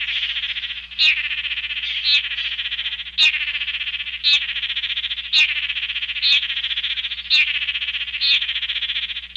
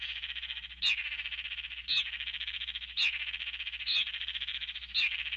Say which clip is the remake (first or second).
second